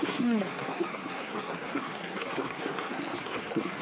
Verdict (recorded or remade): remade